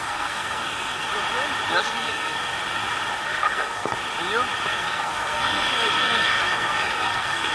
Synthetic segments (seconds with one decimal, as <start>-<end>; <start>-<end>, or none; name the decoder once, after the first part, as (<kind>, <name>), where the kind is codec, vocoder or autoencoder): 0.0-1.1 (codec, SNAC); 1.8-2.5; 3.2-3.9; 4.7-7.5